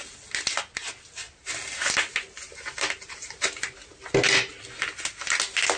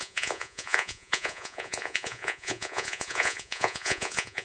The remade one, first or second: second